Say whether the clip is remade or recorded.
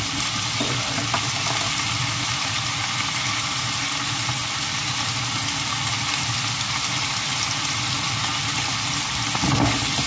recorded